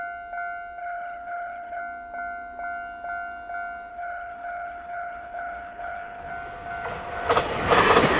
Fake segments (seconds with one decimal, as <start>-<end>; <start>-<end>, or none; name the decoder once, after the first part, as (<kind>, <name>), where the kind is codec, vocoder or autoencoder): 0.8-1.8 (codec, HILCodec); 3.9-6.3